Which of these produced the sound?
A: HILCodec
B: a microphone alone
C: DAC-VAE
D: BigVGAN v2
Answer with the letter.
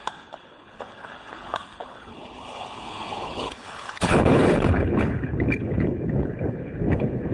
A